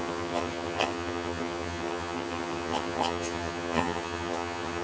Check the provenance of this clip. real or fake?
fake